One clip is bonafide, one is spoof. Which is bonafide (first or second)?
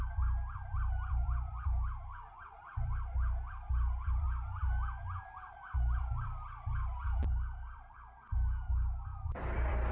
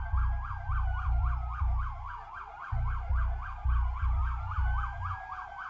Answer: second